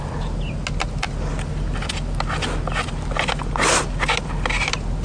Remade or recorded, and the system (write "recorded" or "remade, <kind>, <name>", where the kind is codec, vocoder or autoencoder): recorded